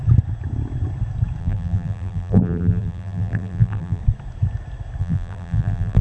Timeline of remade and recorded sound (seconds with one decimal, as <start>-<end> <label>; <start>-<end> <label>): 0.0-1.4 recorded; 1.4-4.0 remade; 4.0-5.0 recorded; 5.0-6.0 remade